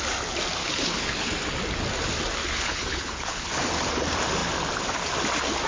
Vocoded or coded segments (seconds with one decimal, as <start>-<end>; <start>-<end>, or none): 0.6-1.3; 2.4-3.5

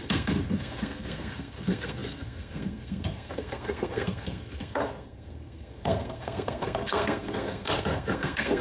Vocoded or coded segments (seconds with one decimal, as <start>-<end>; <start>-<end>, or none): 0.0-8.6

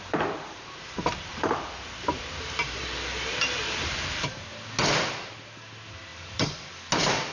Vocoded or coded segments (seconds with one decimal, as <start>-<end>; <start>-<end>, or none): 0.0-4.4; 6.1-6.7

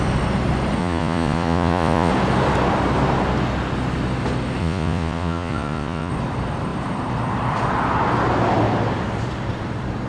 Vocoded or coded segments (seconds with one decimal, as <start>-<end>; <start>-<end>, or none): 0.8-2.1; 4.6-6.1

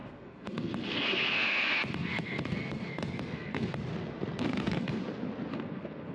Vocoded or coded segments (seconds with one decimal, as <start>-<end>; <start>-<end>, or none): 0.0-3.8; 4.4-5.0; 5.5-6.1

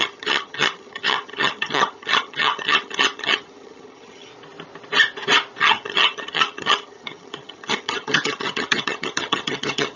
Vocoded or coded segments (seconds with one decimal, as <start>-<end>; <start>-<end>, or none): 0.0-4.3; 5.6-10.0